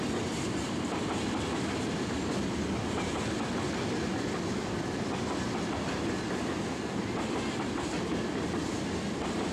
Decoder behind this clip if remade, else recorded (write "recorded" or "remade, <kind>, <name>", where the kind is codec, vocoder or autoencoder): recorded